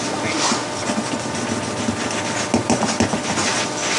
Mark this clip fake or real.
real